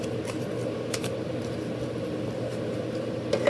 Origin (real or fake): real